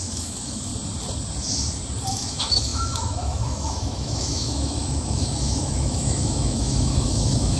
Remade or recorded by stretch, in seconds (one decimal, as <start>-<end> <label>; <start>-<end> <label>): 0.0-0.7 remade; 0.7-2.1 recorded; 2.1-7.6 remade